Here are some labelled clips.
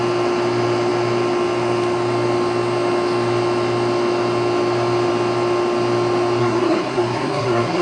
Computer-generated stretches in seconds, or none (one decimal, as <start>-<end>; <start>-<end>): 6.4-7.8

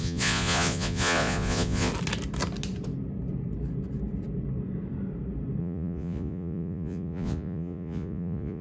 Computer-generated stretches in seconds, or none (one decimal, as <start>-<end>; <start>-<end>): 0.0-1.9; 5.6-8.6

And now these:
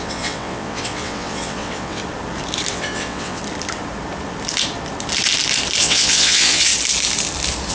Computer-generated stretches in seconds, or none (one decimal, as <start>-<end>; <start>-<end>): 0.0-2.0; 2.7-3.4; 5.8-6.7

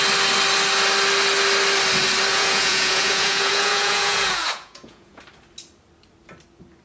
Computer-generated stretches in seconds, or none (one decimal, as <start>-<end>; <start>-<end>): 2.3-5.2

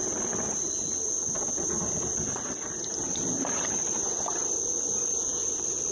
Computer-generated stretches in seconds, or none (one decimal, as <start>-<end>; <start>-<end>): 3.5-5.9

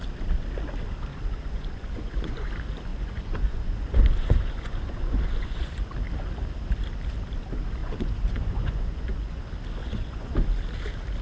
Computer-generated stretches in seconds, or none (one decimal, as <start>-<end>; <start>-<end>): 1.1-2.5; 2.9-5.8; 7.8-9.4; 9.8-10.3